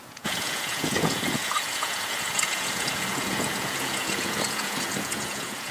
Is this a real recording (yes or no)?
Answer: no